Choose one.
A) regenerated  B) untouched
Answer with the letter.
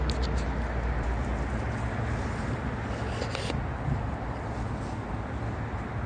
B